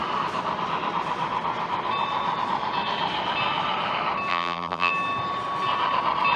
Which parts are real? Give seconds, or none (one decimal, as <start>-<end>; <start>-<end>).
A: 0.0-4.3; 4.9-6.4